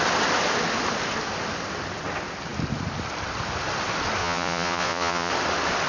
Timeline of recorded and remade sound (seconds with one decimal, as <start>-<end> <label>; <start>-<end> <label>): 0.0-4.2 recorded; 4.2-5.3 remade; 5.3-5.9 recorded